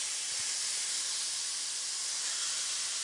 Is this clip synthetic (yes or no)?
no